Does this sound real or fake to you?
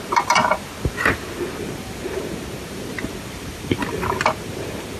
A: fake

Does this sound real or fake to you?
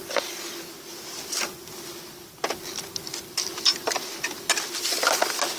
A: real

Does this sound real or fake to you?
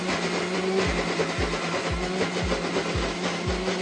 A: real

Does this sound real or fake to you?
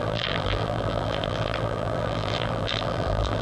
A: fake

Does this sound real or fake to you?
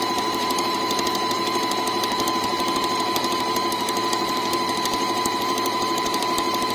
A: fake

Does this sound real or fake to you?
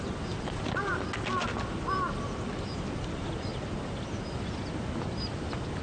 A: real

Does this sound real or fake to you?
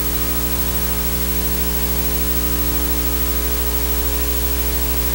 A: real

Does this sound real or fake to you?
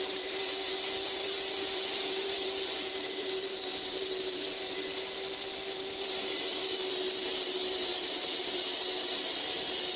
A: fake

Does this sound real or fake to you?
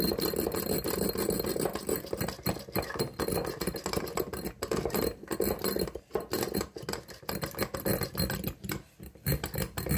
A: real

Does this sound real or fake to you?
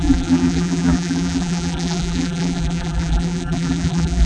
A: fake